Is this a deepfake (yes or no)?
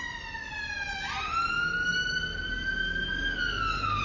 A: no